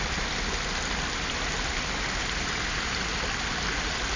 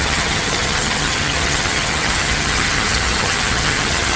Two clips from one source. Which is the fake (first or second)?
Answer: second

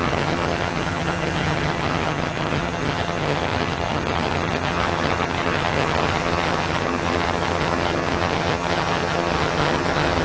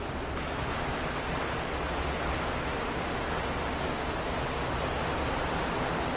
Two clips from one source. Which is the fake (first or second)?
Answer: first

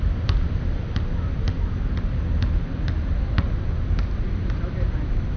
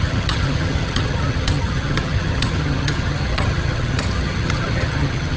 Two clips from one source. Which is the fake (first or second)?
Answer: second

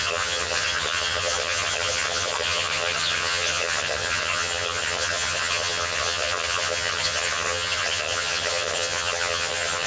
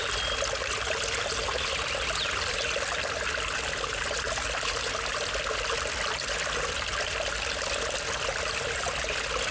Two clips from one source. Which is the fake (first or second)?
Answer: first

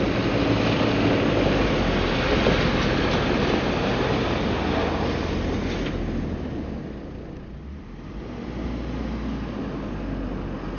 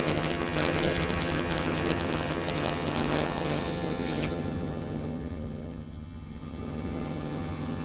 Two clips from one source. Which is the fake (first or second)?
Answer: second